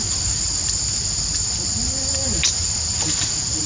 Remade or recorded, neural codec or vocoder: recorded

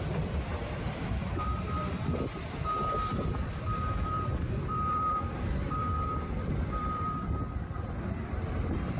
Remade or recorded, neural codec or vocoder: remade, vocoder, BigVGAN v2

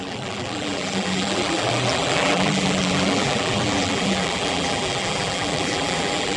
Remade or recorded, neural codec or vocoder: remade, vocoder, BigVGAN v2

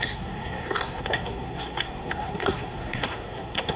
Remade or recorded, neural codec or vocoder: remade, codec, SNAC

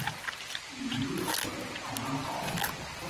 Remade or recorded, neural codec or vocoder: recorded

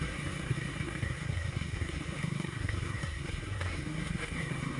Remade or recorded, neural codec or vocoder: remade, codec, SNAC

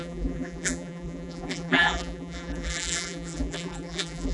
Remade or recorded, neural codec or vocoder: remade, vocoder, BigVGAN v2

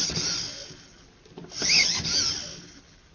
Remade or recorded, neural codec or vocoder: recorded